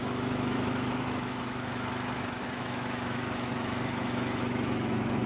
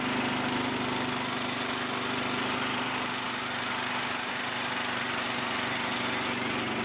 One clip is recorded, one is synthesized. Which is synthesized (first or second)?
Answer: first